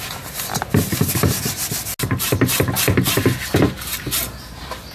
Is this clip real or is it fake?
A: real